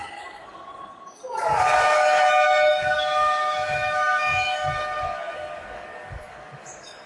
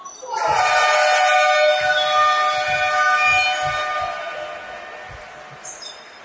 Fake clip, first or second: first